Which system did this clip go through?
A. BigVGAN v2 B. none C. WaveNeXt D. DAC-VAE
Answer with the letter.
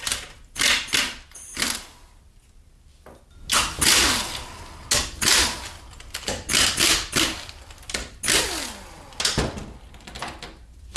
B